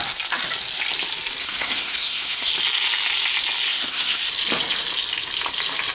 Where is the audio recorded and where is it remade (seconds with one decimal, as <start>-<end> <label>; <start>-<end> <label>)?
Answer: 0.0-1.4 recorded; 1.4-2.5 remade; 2.5-3.7 recorded; 3.7-4.3 remade; 4.3-5.9 recorded